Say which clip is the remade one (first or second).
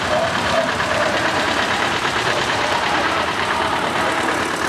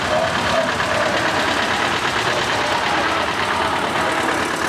first